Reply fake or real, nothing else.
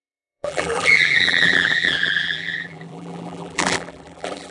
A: fake